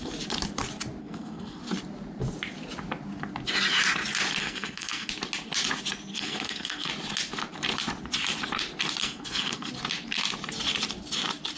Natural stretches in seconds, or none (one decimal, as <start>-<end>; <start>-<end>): 0.0-1.0; 1.6-4.4; 5.1-6.1; 6.9-9.0; 9.7-11.6